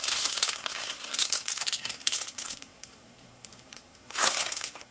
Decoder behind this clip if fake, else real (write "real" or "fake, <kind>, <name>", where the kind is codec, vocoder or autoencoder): fake, codec, SNAC